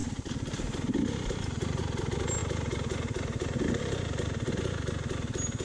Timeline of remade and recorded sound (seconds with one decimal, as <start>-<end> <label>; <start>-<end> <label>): 0.0-1.8 remade; 1.8-2.4 recorded; 2.4-4.5 remade; 4.5-5.6 recorded